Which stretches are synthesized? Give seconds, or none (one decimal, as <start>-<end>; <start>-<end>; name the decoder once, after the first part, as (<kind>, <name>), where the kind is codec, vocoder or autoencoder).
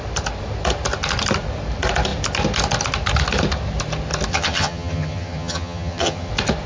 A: 4.3-6.3 (vocoder, HiFi-GAN)